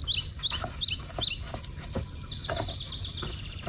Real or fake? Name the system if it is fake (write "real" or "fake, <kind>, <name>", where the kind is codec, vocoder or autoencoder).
real